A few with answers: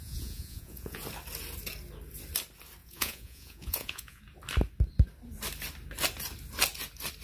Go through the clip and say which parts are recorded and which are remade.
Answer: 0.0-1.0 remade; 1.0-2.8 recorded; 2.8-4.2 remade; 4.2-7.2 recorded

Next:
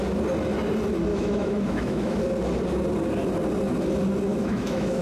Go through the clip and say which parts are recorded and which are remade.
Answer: 0.0-1.1 recorded; 1.1-2.2 remade; 2.2-4.3 recorded; 4.3-5.0 remade

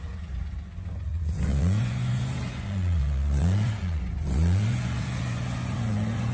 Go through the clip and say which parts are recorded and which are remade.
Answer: 0.0-6.3 remade

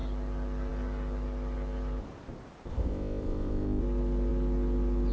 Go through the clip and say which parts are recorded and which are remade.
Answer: 0.0-2.7 recorded; 2.7-3.8 remade; 3.8-5.1 recorded

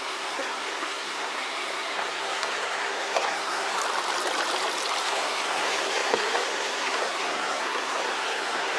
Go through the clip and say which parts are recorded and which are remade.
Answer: 0.0-3.8 remade; 3.8-5.0 recorded; 5.0-8.8 remade

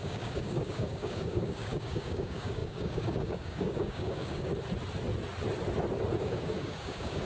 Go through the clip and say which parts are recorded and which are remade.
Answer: 0.0-4.5 remade; 4.5-6.2 recorded; 6.2-7.3 remade

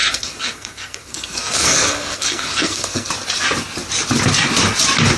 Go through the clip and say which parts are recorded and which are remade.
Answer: 0.0-3.1 remade; 3.1-5.2 recorded